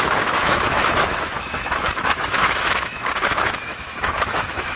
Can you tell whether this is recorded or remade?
remade